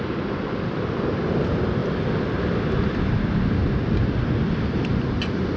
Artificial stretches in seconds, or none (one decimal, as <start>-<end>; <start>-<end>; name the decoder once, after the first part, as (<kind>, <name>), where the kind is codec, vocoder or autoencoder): none